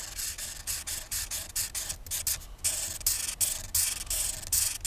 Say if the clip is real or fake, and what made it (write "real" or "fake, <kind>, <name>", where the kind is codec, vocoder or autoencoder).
real